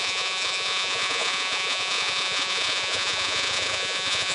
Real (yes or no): no